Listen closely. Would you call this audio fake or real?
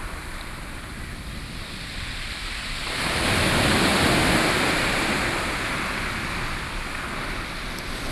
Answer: real